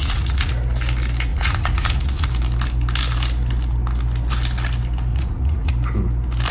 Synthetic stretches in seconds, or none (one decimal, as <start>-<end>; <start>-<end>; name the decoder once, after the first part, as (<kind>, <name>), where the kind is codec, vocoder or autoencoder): 0.0-0.5 (vocoder, Vocos); 1.3-2.3; 5.1-5.7